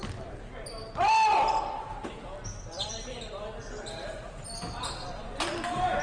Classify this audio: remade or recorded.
recorded